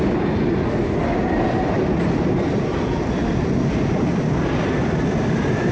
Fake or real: real